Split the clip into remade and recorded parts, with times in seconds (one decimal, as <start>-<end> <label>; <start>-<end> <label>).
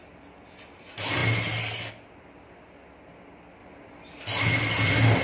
0.0-5.2 recorded